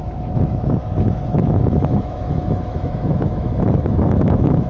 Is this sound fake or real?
fake